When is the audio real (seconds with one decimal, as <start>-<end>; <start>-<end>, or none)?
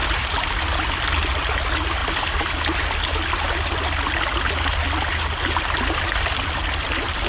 0.0-7.3